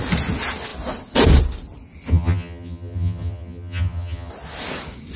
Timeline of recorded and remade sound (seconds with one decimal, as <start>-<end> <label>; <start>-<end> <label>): 0.0-2.1 recorded; 2.1-4.3 remade; 4.3-5.2 recorded